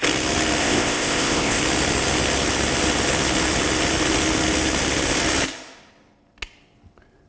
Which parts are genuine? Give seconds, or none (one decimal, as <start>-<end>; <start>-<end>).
0.0-0.6; 1.6-7.3